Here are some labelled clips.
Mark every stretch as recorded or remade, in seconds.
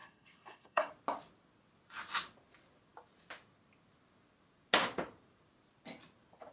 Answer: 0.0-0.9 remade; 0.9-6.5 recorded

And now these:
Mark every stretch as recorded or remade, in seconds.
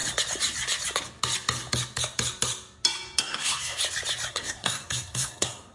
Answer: 0.0-3.2 recorded; 3.2-3.8 remade; 3.8-4.3 recorded; 4.3-5.7 remade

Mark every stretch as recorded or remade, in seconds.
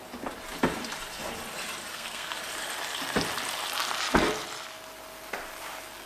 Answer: 0.0-1.9 recorded; 1.9-2.4 remade; 2.4-6.1 recorded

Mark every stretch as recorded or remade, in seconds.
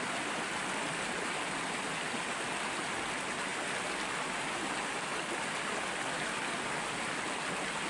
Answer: 0.0-7.9 recorded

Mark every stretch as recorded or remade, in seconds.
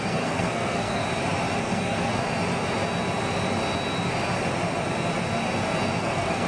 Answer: 0.0-1.0 remade; 1.0-1.6 recorded; 1.6-2.1 remade; 2.1-6.0 recorded; 6.0-6.5 remade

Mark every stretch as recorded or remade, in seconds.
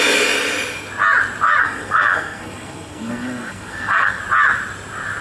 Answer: 0.0-1.6 recorded; 1.6-4.2 remade; 4.2-5.2 recorded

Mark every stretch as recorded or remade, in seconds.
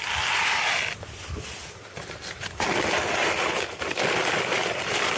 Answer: 0.0-5.2 recorded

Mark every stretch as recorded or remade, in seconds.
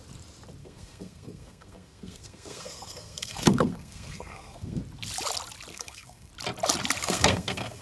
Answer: 0.0-0.6 recorded; 0.6-4.8 remade; 4.8-5.7 recorded; 5.7-6.3 remade; 6.3-7.0 recorded; 7.0-7.8 remade